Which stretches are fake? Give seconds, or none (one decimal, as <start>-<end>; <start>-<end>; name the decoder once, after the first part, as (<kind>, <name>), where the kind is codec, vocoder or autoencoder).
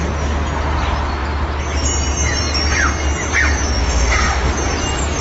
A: 3.8-4.5 (autoencoder, DAC-VAE)